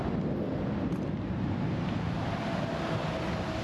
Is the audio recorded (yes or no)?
yes